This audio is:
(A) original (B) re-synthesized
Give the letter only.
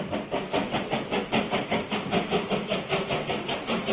A